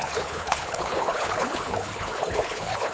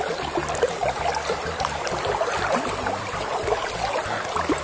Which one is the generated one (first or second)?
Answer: first